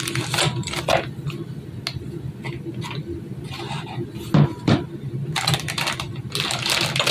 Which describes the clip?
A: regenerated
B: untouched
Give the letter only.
B